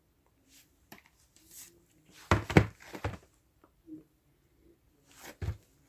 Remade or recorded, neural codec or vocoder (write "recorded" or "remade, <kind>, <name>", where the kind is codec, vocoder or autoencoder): recorded